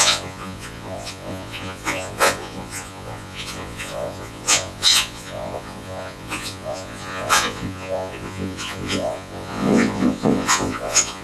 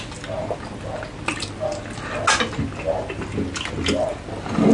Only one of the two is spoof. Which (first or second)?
first